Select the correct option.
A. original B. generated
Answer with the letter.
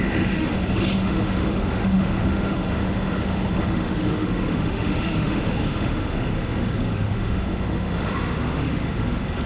B